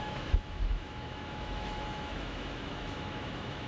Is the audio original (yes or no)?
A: no